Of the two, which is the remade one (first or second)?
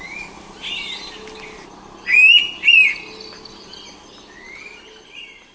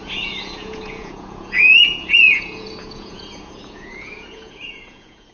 second